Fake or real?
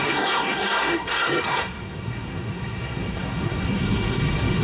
fake